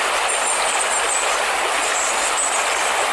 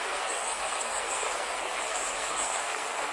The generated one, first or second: second